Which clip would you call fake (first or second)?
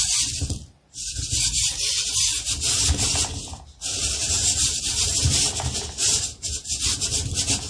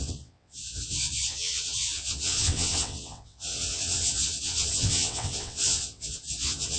second